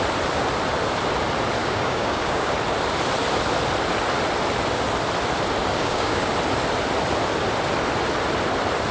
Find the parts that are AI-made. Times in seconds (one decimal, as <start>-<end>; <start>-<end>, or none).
1.6-2.5; 5.6-6.3